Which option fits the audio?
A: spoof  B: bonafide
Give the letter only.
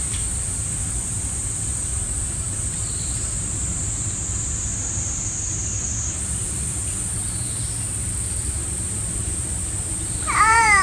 A